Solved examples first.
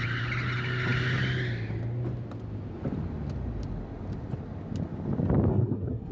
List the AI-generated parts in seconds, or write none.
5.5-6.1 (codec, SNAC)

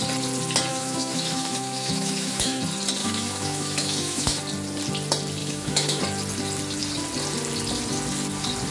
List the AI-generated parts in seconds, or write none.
0.7-2.6 (autoencoder, DAC-VAE); 3.0-4.4; 5.4-6.0